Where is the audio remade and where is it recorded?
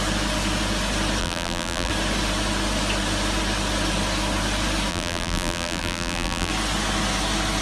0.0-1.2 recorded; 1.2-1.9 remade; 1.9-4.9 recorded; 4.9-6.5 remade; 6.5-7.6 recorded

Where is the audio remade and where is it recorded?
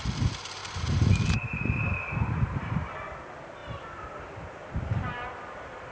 0.0-0.6 recorded; 0.6-2.9 remade; 2.9-3.6 recorded; 3.6-5.9 remade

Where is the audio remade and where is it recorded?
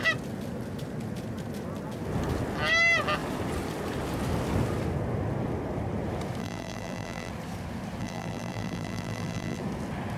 0.0-6.4 recorded; 6.4-7.3 remade; 7.3-8.0 recorded; 8.0-9.6 remade; 9.6-10.2 recorded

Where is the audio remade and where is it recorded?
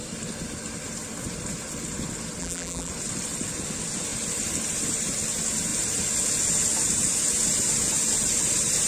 0.0-2.4 recorded; 2.4-2.9 remade; 2.9-8.9 recorded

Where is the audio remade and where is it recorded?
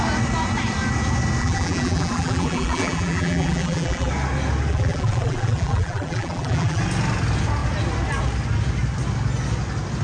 0.0-1.4 recorded; 1.4-4.1 remade; 4.1-4.7 recorded; 4.7-6.8 remade; 6.8-10.0 recorded